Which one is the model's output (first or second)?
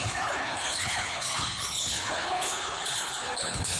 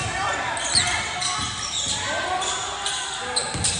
first